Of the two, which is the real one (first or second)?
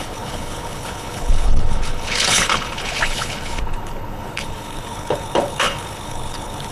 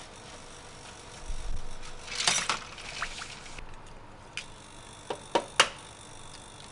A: second